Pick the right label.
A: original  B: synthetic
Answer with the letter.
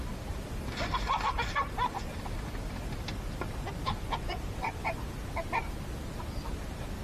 A